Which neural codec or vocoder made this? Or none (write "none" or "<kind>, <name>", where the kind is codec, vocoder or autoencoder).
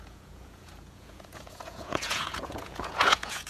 vocoder, Vocos